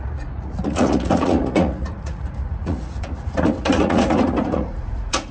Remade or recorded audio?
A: remade